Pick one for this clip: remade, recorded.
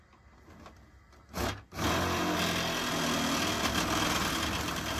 recorded